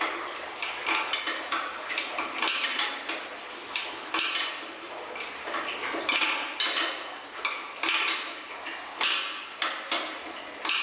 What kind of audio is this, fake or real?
real